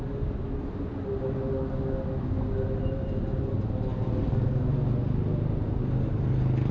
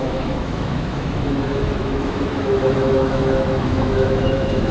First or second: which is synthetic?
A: second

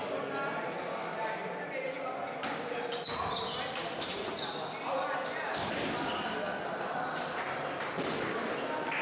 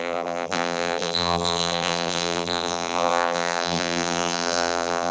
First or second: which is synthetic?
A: second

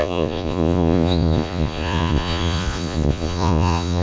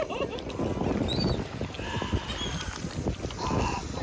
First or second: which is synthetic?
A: first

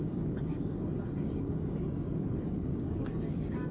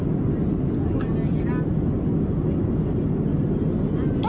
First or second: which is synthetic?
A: first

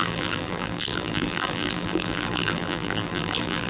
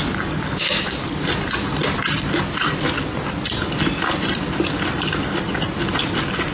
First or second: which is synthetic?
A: first